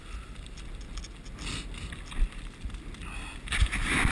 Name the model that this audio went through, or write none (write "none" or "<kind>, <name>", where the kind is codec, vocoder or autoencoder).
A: none